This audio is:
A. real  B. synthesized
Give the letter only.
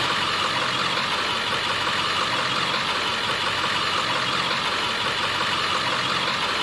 A